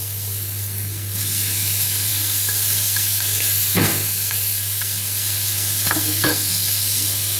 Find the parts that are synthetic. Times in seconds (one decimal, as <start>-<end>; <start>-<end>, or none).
0.0-7.4